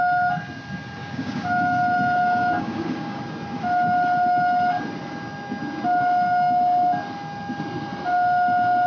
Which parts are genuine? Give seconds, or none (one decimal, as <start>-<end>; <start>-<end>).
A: 0.0-1.0; 3.2-8.9